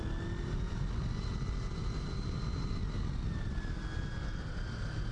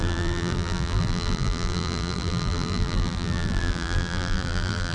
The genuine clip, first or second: first